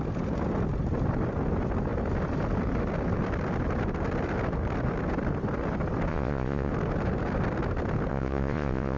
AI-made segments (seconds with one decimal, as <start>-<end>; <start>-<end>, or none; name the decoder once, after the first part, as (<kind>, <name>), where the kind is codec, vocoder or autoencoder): 6.1-6.7 (vocoder, Vocos); 8.1-9.0